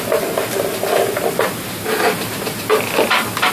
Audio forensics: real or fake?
real